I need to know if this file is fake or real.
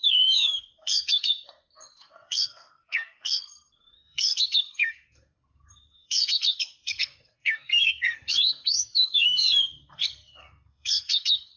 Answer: fake